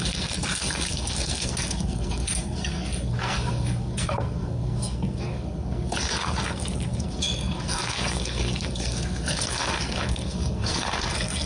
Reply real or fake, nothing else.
fake